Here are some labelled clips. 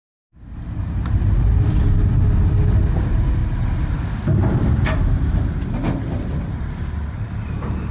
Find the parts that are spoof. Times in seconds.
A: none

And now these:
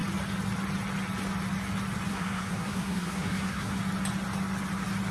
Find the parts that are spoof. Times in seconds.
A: 2.1-3.8 (codec, SNAC)

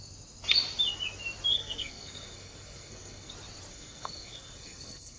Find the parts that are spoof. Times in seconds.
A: 1.5-3.3 (codec, SNAC); 3.7-5.2

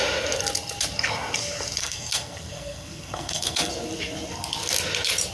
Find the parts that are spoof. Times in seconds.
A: 1.8-3.7 (codec, SNAC)

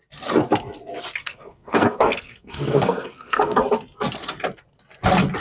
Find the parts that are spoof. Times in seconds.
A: 1.2-3.6 (codec, SNAC)

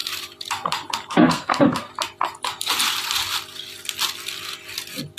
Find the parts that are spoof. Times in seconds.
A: 1.1-1.9 (codec, SNAC)

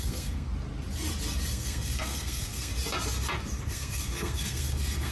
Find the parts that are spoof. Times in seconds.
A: 0.0-0.5 (codec, SNAC); 1.5-2.7; 3.7-5.1

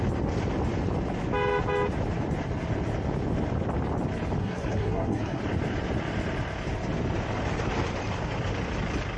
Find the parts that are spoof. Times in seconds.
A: 4.4-5.4 (codec, SNAC)